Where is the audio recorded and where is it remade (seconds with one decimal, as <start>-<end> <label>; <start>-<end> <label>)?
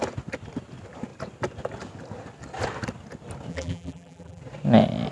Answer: 0.0-3.5 recorded; 3.5-4.4 remade; 4.4-5.1 recorded